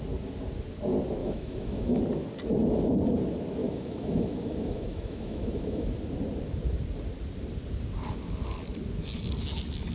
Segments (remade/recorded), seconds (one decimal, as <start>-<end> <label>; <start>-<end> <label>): 0.0-1.2 recorded; 1.2-2.0 remade; 2.0-3.6 recorded; 3.6-5.9 remade; 5.9-9.9 recorded